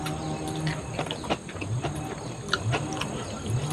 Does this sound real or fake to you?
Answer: real